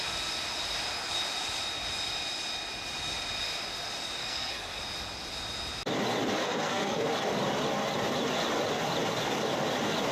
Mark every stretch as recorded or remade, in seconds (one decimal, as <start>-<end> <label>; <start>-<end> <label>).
0.0-4.2 recorded; 4.2-4.8 remade; 4.8-6.4 recorded; 6.4-7.1 remade; 7.1-10.1 recorded